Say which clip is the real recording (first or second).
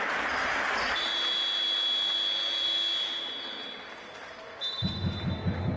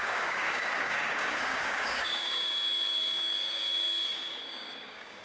first